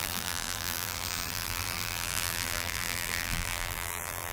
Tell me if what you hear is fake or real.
fake